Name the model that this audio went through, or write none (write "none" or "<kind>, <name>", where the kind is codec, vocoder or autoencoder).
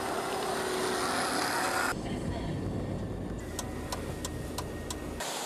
none